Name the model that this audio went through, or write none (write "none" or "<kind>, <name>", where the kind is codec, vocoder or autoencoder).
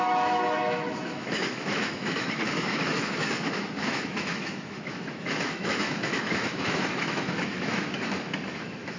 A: autoencoder, DAC-VAE